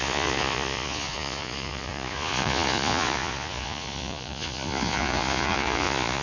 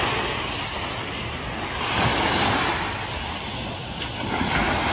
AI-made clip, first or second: first